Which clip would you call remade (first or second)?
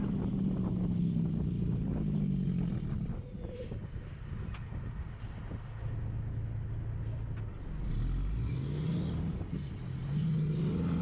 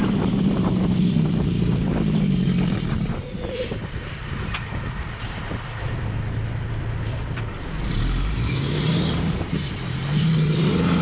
second